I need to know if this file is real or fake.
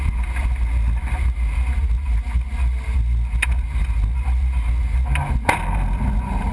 real